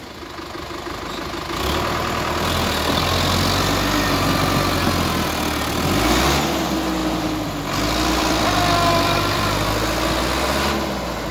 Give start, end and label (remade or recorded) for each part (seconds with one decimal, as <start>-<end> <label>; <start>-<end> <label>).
0.0-7.0 recorded; 7.0-9.7 remade; 9.7-11.3 recorded